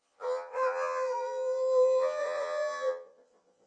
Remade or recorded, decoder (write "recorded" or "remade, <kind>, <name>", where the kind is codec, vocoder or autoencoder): remade, vocoder, Vocos